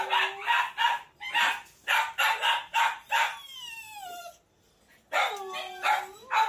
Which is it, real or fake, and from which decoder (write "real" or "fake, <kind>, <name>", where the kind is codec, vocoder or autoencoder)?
real